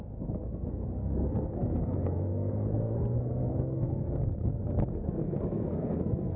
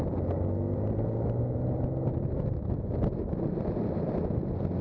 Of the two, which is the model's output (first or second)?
first